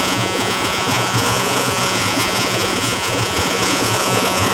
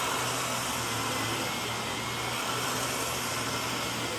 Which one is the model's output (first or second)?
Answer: first